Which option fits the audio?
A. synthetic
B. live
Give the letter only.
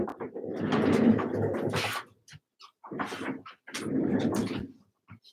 B